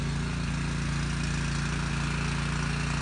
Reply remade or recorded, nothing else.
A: recorded